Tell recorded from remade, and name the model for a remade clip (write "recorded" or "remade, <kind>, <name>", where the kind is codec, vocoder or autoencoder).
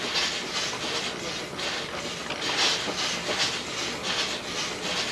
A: recorded